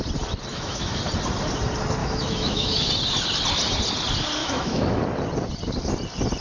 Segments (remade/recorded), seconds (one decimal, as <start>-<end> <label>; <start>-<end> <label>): 0.0-0.5 recorded; 0.5-1.0 remade; 1.0-2.0 recorded; 2.0-2.9 remade; 2.9-4.4 recorded; 4.4-5.0 remade; 5.0-6.4 recorded